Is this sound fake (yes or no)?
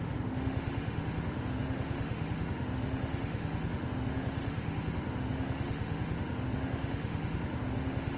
yes